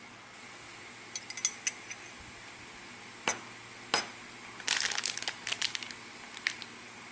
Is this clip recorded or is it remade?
recorded